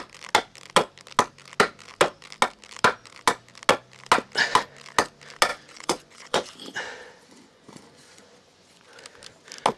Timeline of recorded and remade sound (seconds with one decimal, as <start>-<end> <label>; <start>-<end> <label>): 0.0-5.5 recorded; 5.5-9.0 remade; 9.0-9.8 recorded